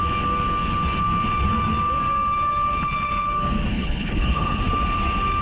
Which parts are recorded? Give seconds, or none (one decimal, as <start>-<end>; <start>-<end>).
0.0-3.7; 4.6-5.4